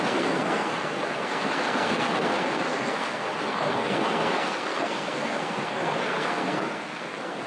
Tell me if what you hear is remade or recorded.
remade